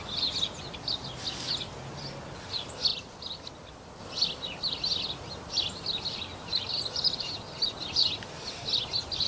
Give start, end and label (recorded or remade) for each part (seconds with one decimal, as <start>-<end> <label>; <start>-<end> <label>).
0.0-9.3 recorded